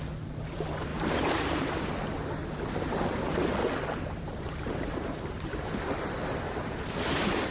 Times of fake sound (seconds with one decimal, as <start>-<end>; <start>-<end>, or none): 0.9-1.9; 3.6-7.0